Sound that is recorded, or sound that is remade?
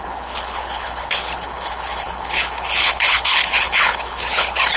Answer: remade